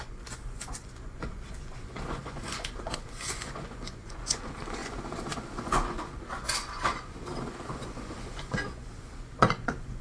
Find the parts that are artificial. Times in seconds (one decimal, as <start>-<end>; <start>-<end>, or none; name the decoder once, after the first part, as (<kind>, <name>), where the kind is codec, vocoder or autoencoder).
0.0-10.0 (vocoder, Vocos)